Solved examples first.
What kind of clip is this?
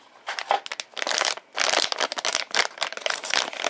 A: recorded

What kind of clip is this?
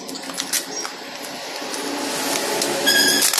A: recorded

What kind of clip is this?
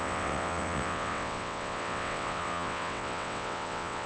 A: remade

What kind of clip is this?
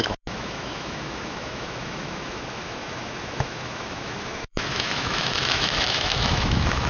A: remade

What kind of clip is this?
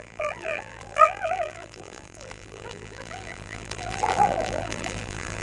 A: remade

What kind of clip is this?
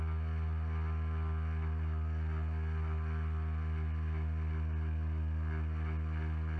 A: recorded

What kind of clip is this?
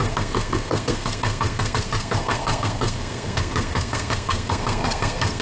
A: remade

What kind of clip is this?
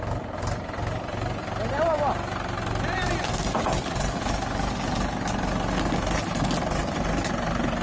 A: recorded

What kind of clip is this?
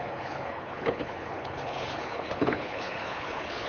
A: remade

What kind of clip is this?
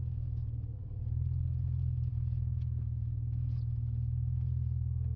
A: recorded